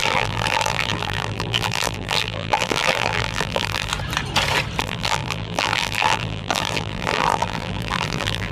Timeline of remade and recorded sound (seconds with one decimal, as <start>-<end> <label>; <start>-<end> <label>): 0.0-3.9 remade; 3.9-4.8 recorded; 4.8-8.5 remade